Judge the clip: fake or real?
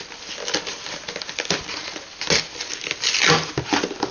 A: real